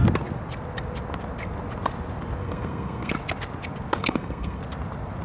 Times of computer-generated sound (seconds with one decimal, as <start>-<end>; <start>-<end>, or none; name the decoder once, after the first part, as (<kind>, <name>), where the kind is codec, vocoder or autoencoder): 2.4-3.1 (codec, SNAC); 4.0-4.6